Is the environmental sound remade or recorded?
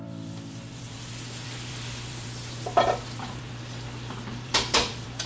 remade